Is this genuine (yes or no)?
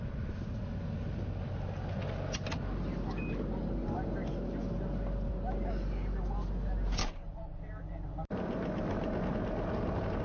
yes